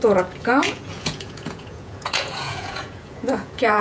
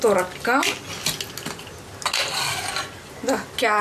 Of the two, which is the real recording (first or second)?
second